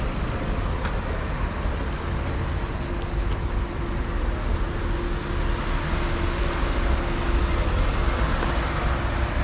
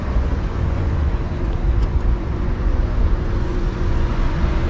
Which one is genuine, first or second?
first